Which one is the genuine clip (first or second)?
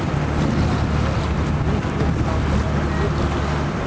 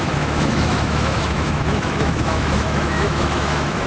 first